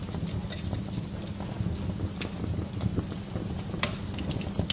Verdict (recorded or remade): recorded